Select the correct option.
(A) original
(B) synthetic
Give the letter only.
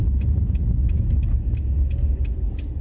A